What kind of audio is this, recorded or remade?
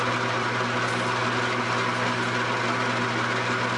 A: recorded